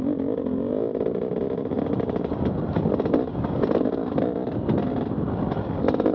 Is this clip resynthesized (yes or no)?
no